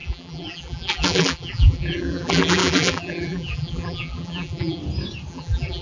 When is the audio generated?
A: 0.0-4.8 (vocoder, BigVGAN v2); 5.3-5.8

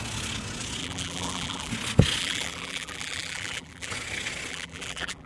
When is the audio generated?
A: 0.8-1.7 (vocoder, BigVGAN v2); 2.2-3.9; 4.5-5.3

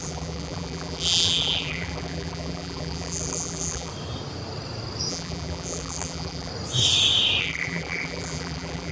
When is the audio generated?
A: 0.0-3.9 (vocoder, BigVGAN v2); 5.1-6.5; 7.4-8.9

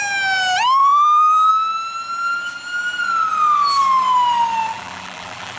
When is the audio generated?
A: 0.8-1.5 (vocoder, BigVGAN v2); 4.7-5.6